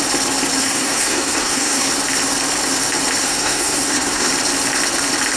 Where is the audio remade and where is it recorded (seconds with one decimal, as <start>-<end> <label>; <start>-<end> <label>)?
0.0-0.6 recorded; 0.6-1.9 remade; 1.9-3.2 recorded; 3.2-4.3 remade; 4.3-5.4 recorded